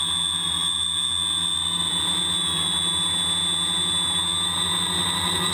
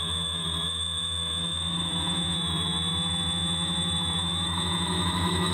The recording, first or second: first